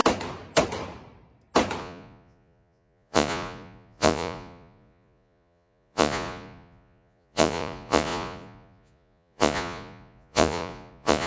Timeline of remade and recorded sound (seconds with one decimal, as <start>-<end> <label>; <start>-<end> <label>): 0.0-1.8 recorded; 1.8-11.3 remade